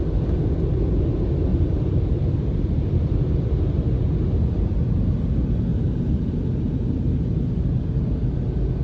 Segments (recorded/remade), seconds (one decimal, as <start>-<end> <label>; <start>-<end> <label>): 0.0-1.5 recorded; 1.5-3.0 remade; 3.0-5.7 recorded; 5.7-6.2 remade; 6.2-8.8 recorded